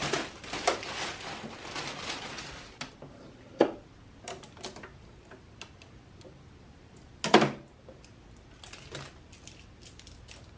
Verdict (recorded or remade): recorded